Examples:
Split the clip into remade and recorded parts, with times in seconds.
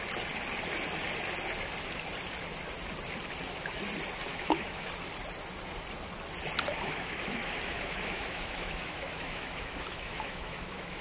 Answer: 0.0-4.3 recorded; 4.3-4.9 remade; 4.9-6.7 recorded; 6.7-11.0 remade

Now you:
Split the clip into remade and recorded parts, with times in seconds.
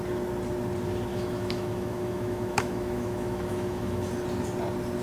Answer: 0.0-1.1 recorded; 1.1-4.1 remade; 4.1-5.0 recorded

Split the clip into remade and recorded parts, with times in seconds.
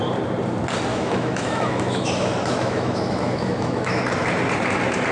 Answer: 0.0-0.9 recorded; 0.9-4.0 remade; 4.0-5.1 recorded